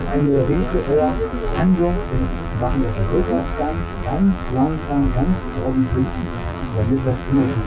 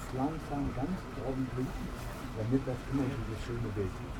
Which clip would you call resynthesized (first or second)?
first